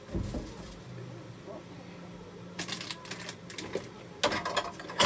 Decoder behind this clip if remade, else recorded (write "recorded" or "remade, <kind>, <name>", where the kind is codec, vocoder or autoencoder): recorded